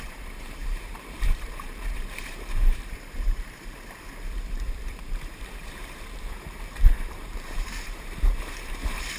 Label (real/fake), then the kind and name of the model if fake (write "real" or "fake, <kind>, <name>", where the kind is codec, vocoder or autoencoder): fake, vocoder, BigVGAN v2